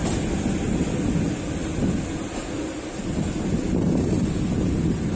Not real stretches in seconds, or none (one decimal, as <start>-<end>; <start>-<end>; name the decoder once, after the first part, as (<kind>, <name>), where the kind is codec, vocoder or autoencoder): none